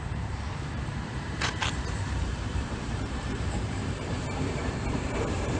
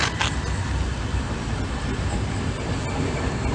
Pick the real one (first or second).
second